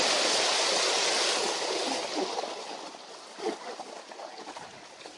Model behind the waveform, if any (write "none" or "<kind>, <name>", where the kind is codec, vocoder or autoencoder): none